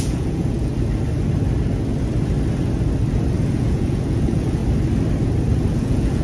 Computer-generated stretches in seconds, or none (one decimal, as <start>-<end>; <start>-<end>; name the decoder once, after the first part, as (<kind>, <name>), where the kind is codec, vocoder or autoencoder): 0.0-0.7 (vocoder, Vocos); 3.5-4.6; 5.7-6.2